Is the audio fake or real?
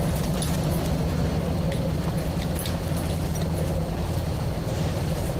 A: real